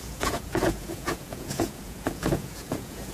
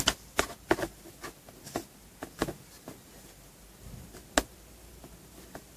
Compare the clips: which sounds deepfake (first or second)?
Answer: first